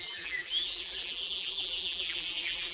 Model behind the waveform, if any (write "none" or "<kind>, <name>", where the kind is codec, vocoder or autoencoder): vocoder, BigVGAN v2